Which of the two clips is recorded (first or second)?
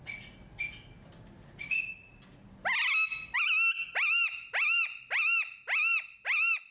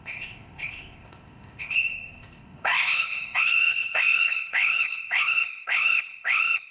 first